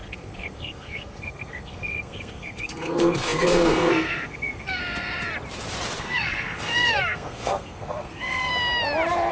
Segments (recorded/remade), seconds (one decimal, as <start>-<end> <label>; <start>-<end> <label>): 0.0-4.8 remade; 4.8-6.0 recorded; 6.0-8.5 remade; 8.5-9.3 recorded

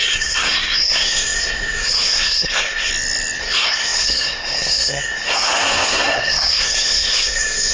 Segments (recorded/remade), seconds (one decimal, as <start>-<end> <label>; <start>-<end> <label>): 0.0-2.9 remade; 2.9-3.4 recorded; 3.4-7.7 remade

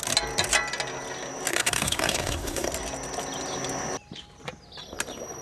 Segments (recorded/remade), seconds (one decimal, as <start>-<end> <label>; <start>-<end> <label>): 0.0-1.5 recorded; 1.5-2.7 remade; 2.7-5.4 recorded

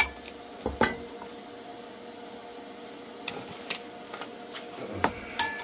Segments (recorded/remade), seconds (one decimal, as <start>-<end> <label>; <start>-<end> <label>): 0.0-5.6 recorded

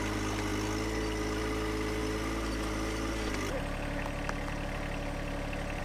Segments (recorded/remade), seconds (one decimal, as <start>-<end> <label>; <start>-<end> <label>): 0.0-5.8 recorded

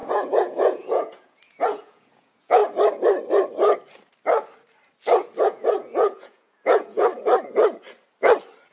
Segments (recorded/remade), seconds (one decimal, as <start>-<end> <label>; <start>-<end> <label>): 0.0-2.6 remade; 2.6-5.4 recorded; 5.4-7.1 remade; 7.1-8.7 recorded

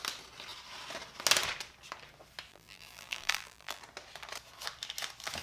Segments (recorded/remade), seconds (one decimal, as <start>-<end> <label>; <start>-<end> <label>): 0.0-2.5 recorded; 2.5-3.8 remade; 3.8-5.4 recorded

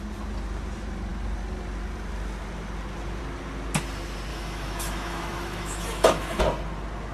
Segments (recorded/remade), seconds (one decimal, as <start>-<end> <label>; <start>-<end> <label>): 0.0-4.3 recorded; 4.3-6.4 remade; 6.4-7.1 recorded